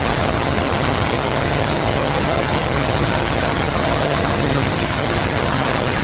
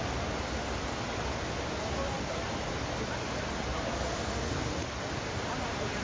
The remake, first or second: first